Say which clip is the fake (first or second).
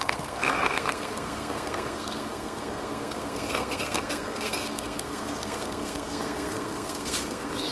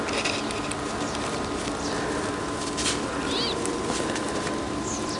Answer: first